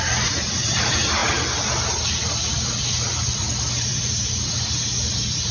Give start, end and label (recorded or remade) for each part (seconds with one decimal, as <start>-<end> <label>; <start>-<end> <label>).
0.0-5.5 recorded